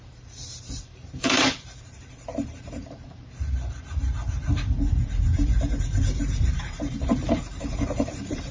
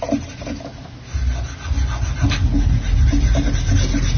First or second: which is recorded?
second